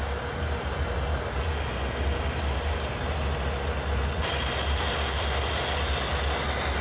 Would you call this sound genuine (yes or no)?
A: yes